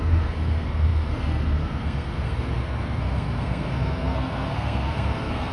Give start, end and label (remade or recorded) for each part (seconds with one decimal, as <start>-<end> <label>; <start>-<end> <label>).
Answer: 0.0-5.5 remade